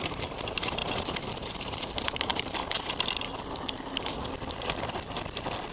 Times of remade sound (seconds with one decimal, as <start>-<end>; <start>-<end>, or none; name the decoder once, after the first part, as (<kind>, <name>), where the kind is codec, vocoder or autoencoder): 0.0-2.3 (vocoder, BigVGAN v2)